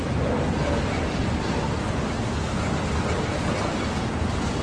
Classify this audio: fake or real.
real